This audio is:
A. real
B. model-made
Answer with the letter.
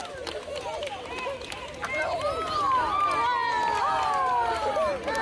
A